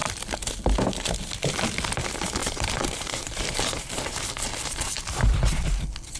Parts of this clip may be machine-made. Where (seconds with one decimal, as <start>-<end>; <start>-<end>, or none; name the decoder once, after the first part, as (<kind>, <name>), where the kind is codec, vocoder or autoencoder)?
2.4-5.8 (vocoder, BigVGAN v2)